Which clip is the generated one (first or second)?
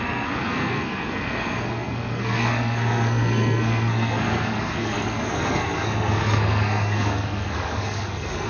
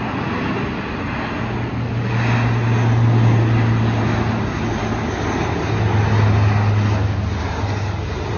first